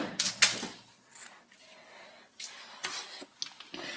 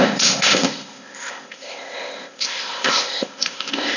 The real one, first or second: first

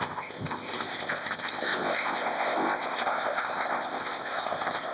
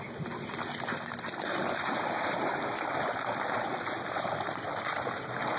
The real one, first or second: second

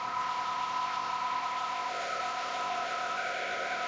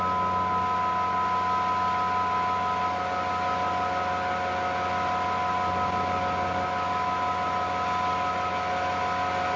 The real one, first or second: second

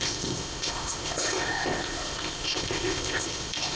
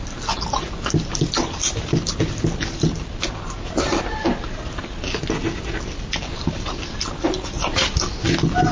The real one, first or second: second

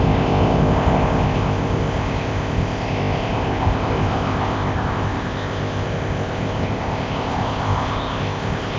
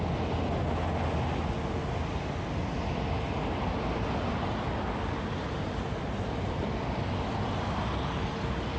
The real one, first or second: second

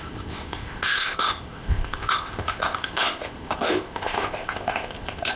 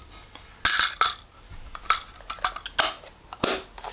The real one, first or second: second